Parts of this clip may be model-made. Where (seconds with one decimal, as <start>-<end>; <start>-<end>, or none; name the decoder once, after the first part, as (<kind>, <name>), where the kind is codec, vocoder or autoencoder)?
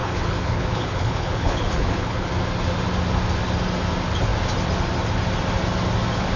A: 0.0-2.3 (codec, HILCodec)